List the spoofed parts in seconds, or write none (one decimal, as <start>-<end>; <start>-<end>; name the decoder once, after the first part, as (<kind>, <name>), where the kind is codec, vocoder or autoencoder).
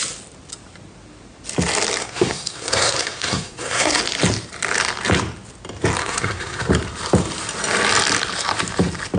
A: 2.0-4.0 (codec, SNAC); 6.0-6.7